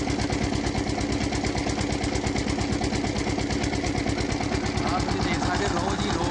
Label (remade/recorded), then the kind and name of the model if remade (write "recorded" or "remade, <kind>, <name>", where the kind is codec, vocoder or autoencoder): recorded